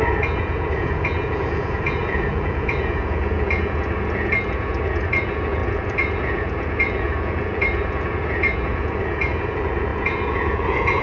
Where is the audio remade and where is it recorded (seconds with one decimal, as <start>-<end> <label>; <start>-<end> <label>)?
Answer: 0.0-11.0 remade